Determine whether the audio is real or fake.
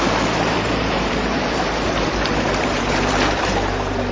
fake